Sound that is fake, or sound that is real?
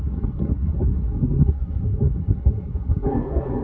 fake